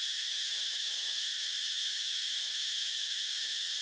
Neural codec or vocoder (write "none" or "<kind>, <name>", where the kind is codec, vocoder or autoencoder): autoencoder, DAC-VAE